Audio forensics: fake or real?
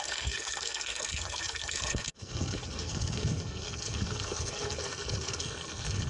fake